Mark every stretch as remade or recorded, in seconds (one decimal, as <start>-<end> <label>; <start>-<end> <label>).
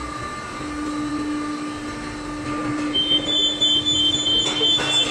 0.0-5.1 recorded